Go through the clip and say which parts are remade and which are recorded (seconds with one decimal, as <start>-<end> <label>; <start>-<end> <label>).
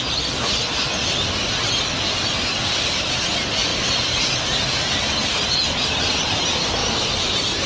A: 0.0-3.7 recorded; 3.7-4.9 remade; 4.9-6.8 recorded; 6.8-7.7 remade